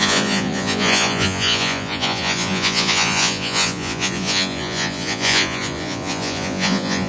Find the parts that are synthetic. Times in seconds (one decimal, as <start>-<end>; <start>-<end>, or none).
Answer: 0.0-7.1